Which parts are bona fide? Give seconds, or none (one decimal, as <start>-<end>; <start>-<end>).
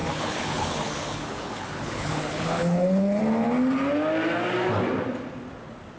3.2-6.0